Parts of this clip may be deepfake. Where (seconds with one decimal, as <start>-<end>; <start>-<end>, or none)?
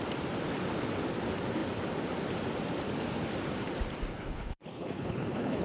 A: 4.1-5.6